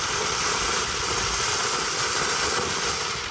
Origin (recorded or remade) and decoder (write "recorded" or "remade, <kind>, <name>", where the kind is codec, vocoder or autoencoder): recorded